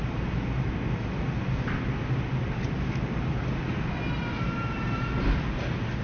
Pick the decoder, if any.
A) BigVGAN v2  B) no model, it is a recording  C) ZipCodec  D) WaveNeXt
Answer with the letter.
B